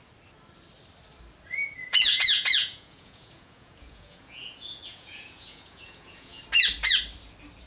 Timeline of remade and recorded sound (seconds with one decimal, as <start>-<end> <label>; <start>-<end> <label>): 0.0-1.8 recorded; 1.8-6.4 remade; 6.4-7.7 recorded